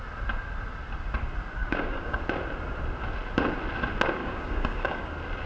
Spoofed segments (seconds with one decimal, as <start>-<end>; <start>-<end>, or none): 1.6-2.2; 4.2-5.1